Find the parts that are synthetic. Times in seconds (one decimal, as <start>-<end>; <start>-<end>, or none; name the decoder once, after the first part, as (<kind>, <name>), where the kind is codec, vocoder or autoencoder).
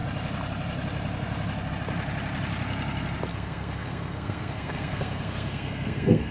3.3-6.3 (codec, SNAC)